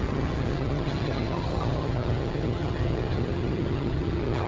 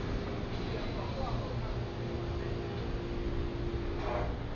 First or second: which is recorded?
second